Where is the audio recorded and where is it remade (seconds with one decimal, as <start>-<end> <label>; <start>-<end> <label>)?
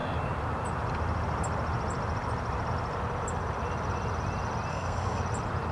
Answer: 0.0-4.7 recorded; 4.7-5.2 remade; 5.2-5.7 recorded